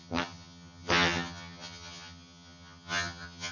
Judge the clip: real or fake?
fake